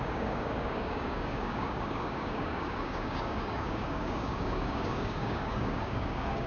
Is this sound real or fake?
fake